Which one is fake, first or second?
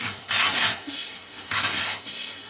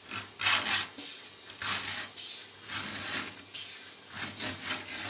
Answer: first